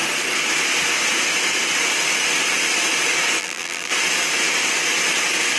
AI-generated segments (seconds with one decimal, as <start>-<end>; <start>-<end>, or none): 3.4-3.9